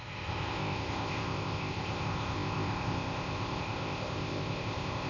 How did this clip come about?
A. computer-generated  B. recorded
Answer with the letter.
A